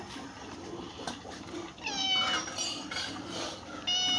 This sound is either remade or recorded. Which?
recorded